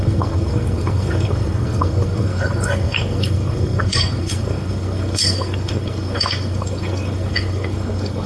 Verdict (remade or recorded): remade